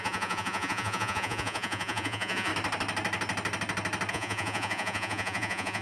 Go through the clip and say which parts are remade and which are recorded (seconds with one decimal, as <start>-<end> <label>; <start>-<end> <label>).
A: 0.0-2.5 remade; 2.5-4.1 recorded; 4.1-5.8 remade

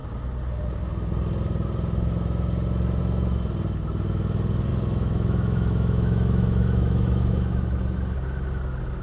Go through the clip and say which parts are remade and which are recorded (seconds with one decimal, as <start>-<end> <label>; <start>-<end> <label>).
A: 0.0-4.7 recorded; 4.7-7.8 remade; 7.8-9.0 recorded

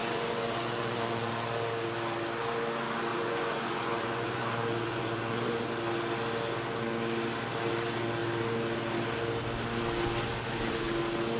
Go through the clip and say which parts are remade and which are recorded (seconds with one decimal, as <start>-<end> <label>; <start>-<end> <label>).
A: 0.0-1.3 remade; 1.3-3.1 recorded; 3.1-5.7 remade; 5.7-11.4 recorded

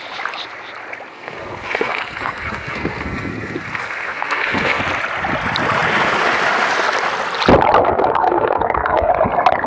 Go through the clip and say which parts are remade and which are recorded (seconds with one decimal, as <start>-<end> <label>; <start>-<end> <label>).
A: 0.0-1.1 recorded; 1.1-4.8 remade; 4.8-7.8 recorded; 7.8-9.1 remade; 9.1-9.7 recorded